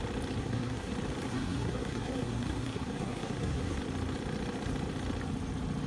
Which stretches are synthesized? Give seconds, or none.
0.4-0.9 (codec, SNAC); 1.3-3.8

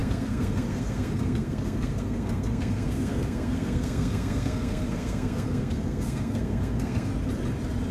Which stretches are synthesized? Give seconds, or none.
0.0-7.1 (codec, SNAC)

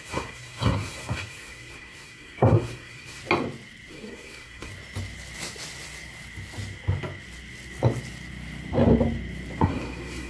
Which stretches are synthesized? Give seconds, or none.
0.0-3.2 (codec, SNAC); 3.9-4.7; 9.6-10.3

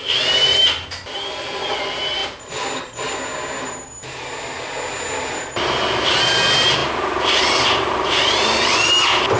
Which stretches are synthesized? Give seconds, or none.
none